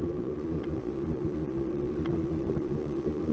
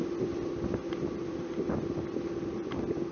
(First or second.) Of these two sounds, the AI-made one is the first